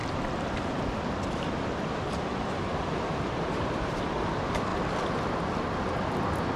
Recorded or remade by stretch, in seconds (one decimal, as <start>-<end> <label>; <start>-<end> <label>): 0.0-6.6 recorded